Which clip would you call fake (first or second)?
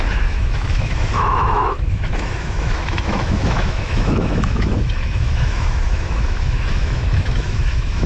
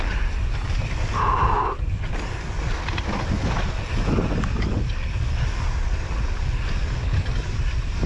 first